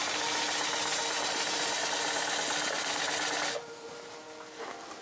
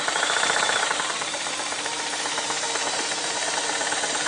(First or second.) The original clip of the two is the first